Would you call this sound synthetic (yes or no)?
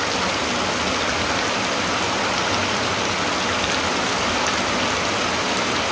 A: no